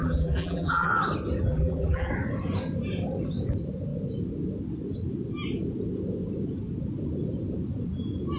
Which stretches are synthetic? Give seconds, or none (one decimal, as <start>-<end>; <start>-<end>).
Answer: 0.0-0.9; 1.5-2.1

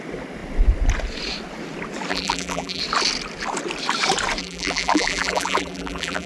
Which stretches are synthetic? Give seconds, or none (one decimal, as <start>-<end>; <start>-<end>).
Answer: 2.1-2.8; 4.4-6.3

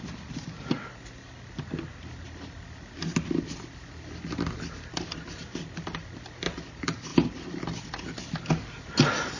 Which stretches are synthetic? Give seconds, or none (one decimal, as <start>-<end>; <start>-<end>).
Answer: 7.1-8.0

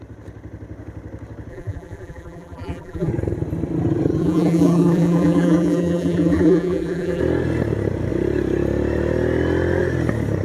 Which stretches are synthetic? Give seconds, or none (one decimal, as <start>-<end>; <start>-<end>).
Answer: 1.5-3.1; 4.2-7.2

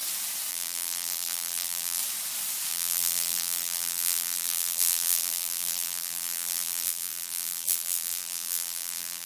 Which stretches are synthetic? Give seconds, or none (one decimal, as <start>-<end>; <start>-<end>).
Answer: 0.5-2.0; 2.7-9.3

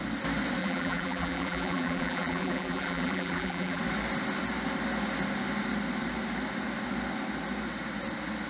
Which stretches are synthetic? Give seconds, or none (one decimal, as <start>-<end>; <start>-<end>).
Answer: 0.6-3.8